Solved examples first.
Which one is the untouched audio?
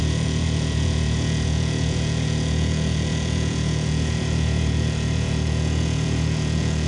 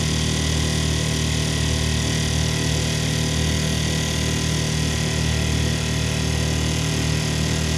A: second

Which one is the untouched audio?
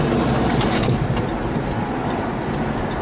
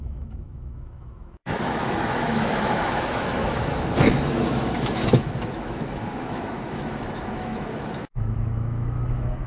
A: first